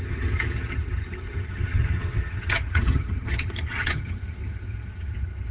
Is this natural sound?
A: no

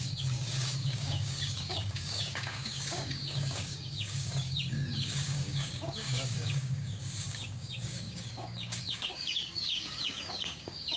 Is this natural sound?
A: no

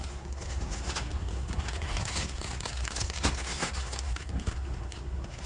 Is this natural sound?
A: no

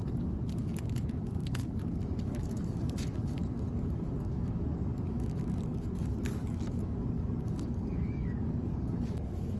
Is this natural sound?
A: no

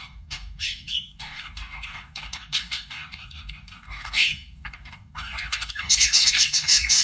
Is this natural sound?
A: no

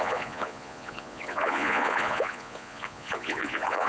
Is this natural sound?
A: no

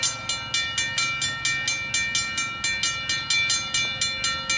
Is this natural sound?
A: yes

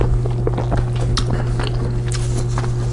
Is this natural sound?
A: yes